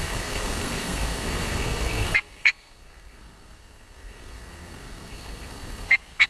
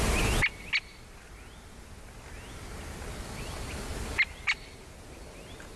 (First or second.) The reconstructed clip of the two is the first